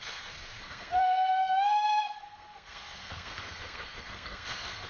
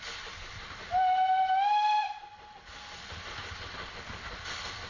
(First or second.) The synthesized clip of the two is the first